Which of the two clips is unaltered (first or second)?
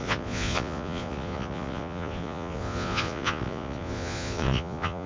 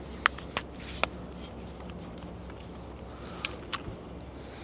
second